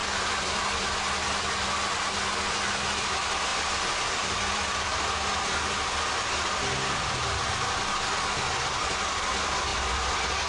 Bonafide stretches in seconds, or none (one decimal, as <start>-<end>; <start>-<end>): 0.6-3.5; 5.7-9.7